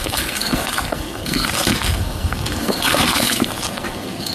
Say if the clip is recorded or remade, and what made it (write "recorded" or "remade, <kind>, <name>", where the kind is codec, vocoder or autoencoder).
remade, codec, SNAC